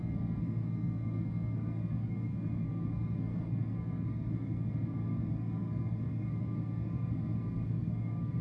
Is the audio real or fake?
fake